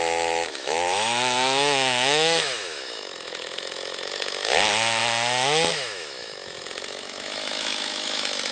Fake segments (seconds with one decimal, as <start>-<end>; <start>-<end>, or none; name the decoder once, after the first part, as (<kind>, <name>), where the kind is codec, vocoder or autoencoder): 0.0-5.0 (autoencoder, DAC-VAE); 5.7-8.5